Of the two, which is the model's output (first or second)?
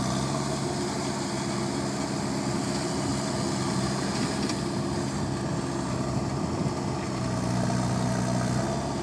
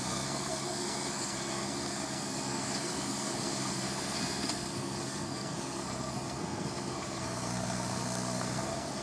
second